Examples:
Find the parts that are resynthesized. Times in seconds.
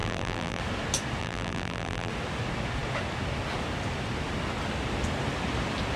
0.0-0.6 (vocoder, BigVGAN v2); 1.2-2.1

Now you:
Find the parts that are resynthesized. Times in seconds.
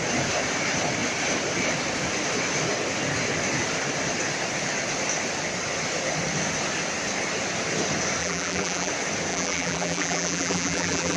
8.2-8.9 (vocoder, BigVGAN v2); 9.3-11.2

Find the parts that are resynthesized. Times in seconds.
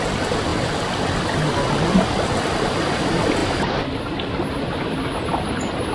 0.0-5.9 (vocoder, BigVGAN v2)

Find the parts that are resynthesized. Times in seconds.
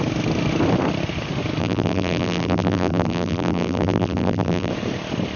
1.6-4.7 (vocoder, BigVGAN v2)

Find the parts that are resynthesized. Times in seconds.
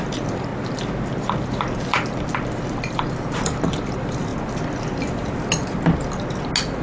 0.0-0.5 (vocoder, BigVGAN v2); 3.3-4.3